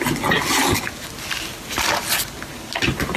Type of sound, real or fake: real